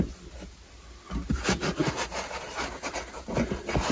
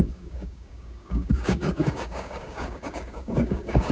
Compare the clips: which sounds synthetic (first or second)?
second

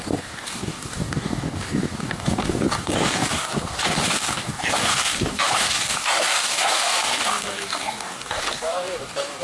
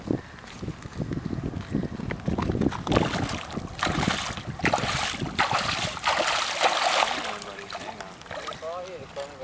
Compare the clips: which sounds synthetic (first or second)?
first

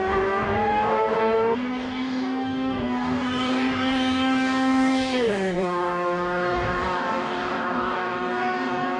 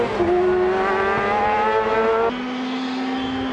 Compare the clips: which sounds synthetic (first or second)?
first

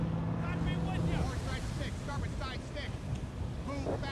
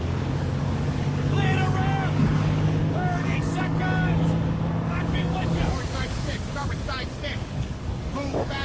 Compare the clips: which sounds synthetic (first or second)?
second